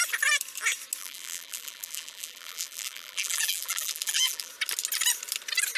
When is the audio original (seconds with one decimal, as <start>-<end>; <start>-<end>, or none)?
0.0-1.0; 4.5-5.8